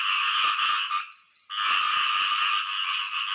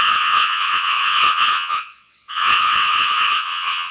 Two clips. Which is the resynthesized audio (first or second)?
second